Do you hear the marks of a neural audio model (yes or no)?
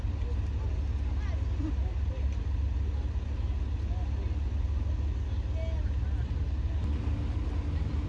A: no